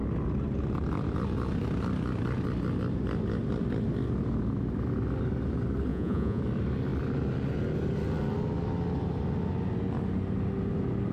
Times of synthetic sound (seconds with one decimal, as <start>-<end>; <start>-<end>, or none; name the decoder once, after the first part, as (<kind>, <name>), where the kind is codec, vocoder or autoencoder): 5.9-6.4 (vocoder, Vocos)